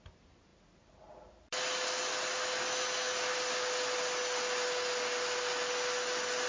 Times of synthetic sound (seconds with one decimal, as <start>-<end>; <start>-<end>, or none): none